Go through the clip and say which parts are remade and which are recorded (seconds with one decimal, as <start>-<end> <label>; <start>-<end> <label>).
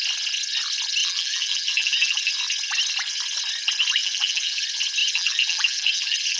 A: 0.0-1.0 recorded; 1.0-2.3 remade; 2.3-4.0 recorded; 4.0-4.6 remade; 4.6-5.0 recorded; 5.0-6.4 remade